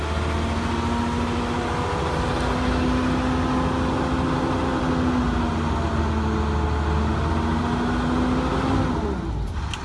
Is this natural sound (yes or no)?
yes